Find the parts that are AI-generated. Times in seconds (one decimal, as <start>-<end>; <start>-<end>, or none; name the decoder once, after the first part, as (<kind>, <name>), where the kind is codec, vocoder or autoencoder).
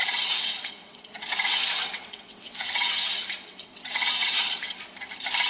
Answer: 0.0-3.1 (vocoder, WaveNeXt); 3.5-4.8